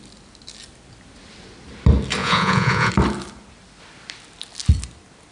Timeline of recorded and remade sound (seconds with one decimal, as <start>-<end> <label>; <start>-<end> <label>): 0.0-2.2 recorded; 2.2-2.9 remade; 2.9-5.3 recorded